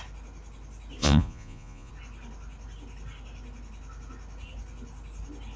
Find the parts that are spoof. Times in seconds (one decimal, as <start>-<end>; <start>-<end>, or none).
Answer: 1.0-1.9

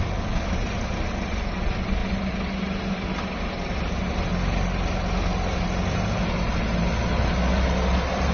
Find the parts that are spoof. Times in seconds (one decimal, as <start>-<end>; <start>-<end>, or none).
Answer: none

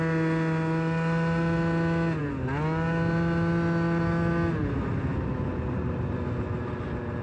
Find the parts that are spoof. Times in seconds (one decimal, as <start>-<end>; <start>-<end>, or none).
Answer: none

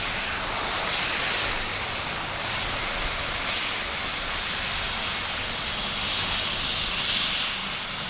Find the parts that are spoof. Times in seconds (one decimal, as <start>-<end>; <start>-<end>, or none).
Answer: 1.7-2.5; 4.1-4.8; 7.6-8.1

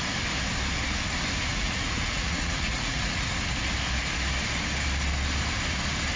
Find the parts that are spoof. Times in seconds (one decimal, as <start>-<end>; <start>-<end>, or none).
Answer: 1.5-3.2

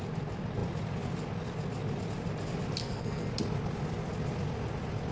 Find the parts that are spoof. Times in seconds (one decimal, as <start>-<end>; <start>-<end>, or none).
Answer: 2.8-3.3

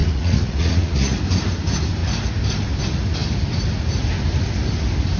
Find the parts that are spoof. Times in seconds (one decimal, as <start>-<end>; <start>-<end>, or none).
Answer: 0.0-1.2

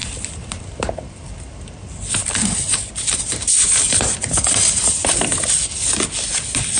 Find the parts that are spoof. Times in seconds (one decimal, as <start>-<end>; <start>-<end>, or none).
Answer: 0.0-0.9; 2.2-6.0